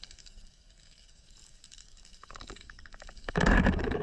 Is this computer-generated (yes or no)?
yes